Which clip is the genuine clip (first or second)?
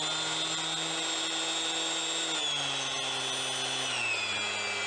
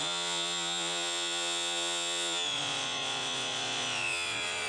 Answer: first